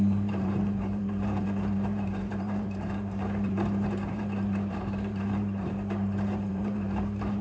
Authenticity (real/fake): fake